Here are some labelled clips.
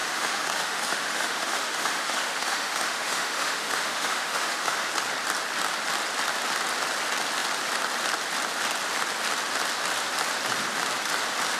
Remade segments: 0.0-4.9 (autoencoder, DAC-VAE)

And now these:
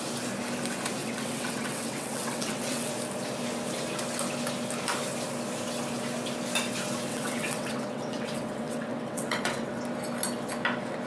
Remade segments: 1.0-2.9 (vocoder, WaveNeXt); 7.1-9.8

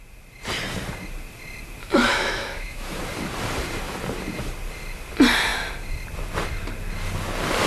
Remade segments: 1.8-3.0 (autoencoder, DAC-VAE)